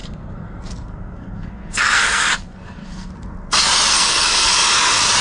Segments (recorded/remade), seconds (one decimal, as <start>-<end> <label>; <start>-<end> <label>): 0.0-3.1 remade; 3.1-3.9 recorded; 3.9-4.5 remade; 4.5-5.2 recorded